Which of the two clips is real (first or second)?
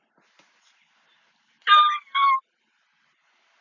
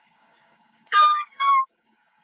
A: first